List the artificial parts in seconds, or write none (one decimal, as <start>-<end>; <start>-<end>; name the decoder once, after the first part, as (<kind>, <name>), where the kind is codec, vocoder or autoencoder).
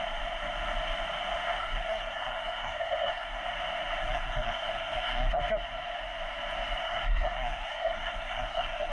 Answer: 1.6-3.4 (codec, SNAC); 4.0-5.4; 6.8-8.9